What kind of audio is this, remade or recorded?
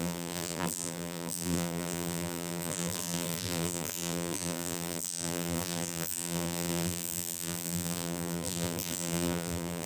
remade